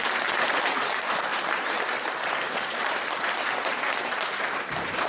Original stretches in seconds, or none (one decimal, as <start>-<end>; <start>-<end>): none